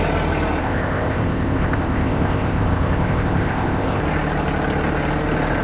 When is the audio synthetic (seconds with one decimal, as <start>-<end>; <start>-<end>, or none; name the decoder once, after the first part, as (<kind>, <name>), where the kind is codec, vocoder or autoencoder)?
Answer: 0.6-4.0 (codec, ZipCodec)